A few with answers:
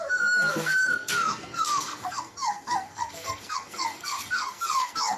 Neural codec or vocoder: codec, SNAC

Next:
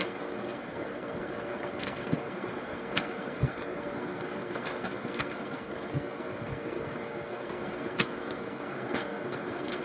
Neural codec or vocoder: codec, SNAC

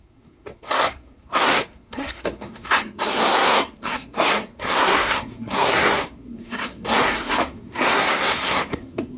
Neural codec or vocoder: codec, SNAC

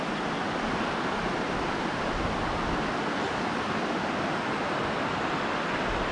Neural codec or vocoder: none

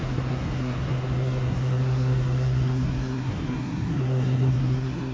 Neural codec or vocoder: codec, SNAC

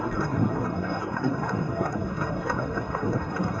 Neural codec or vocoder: codec, SNAC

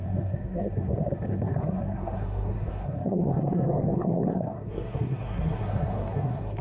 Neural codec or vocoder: codec, SNAC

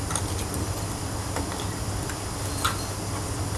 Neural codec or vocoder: none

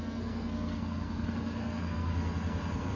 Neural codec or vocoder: codec, SNAC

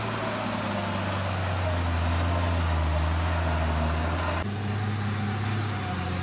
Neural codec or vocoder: none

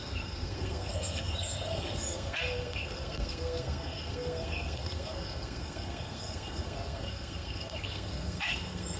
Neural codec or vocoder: codec, SNAC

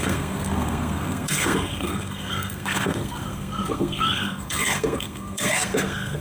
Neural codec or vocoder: codec, SNAC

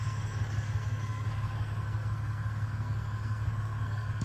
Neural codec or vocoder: codec, SNAC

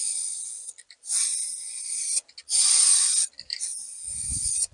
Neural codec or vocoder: none